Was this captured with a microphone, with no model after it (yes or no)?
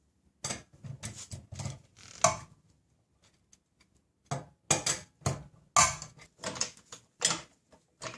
yes